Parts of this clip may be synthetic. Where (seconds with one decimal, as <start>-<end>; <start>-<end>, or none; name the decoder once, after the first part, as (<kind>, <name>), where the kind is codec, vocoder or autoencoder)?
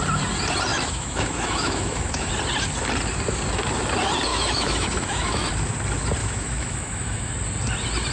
0.7-2.3 (autoencoder, DAC-VAE); 4.3-5.5; 6.2-7.3